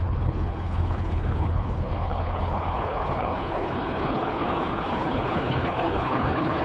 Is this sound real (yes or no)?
no